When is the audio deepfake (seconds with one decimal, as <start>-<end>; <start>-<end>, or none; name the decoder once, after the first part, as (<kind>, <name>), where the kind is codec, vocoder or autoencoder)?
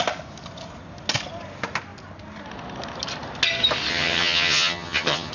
3.9-5.3 (vocoder, HiFi-GAN)